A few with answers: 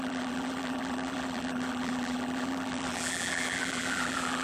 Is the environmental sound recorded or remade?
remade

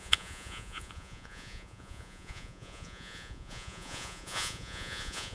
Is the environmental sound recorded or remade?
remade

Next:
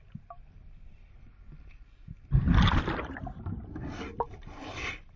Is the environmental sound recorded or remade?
recorded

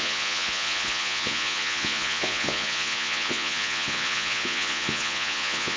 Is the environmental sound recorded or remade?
remade